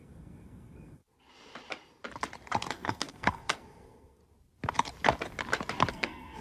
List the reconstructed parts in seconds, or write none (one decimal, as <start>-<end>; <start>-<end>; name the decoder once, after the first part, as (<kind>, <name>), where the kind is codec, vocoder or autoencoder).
0.0-1.0 (codec, SNAC); 2.7-4.2; 5.9-6.4